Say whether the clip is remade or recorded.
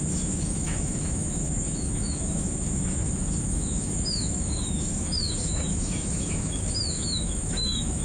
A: remade